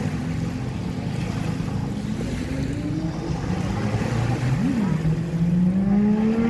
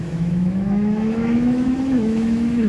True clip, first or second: first